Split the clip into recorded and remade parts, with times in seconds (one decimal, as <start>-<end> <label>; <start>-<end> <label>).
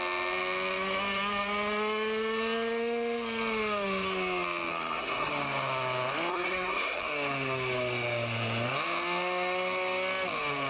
0.0-4.7 recorded; 4.7-5.3 remade; 5.3-6.3 recorded; 6.3-7.0 remade; 7.0-10.7 recorded